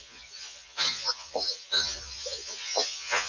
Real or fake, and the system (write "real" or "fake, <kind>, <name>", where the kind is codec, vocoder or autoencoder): fake, vocoder, Vocos